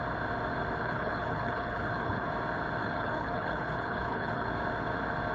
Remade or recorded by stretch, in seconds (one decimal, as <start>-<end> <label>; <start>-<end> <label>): 0.0-0.8 recorded; 0.8-2.3 remade; 2.3-2.8 recorded; 2.8-4.5 remade; 4.5-5.3 recorded